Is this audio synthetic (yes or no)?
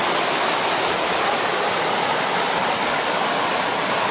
no